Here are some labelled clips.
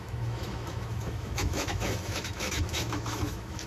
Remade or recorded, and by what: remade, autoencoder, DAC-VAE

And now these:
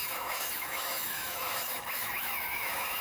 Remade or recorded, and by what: remade, autoencoder, DAC-VAE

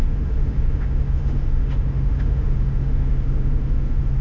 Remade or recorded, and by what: remade, autoencoder, DAC-VAE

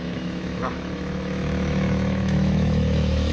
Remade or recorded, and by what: remade, autoencoder, DAC-VAE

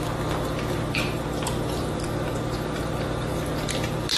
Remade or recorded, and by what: recorded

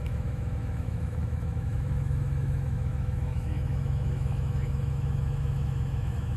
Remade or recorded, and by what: remade, autoencoder, DAC-VAE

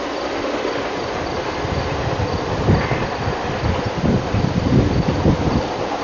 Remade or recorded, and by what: recorded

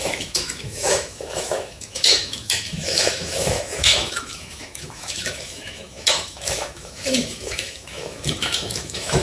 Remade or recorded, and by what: remade, autoencoder, DAC-VAE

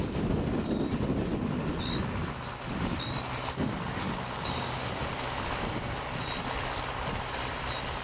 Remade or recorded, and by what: recorded